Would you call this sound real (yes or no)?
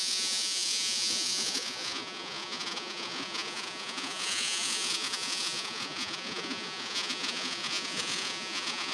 no